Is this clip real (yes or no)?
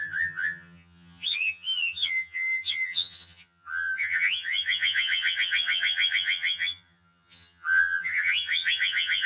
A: no